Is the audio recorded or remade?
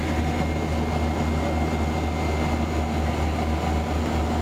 recorded